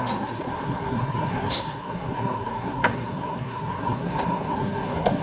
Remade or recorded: remade